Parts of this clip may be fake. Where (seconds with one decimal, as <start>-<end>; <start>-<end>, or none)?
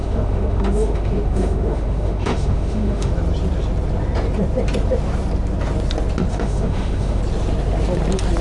0.0-3.1; 6.3-7.2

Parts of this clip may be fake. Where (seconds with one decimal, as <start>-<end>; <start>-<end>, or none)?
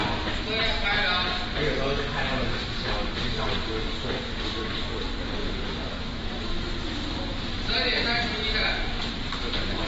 none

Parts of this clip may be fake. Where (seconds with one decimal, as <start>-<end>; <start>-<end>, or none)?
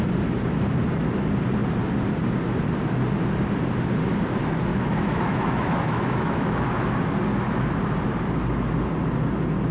4.7-6.7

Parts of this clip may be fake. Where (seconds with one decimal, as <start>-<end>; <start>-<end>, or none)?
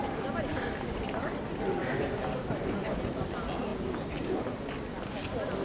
none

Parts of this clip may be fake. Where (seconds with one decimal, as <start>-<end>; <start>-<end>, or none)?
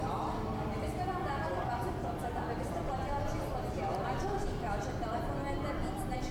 none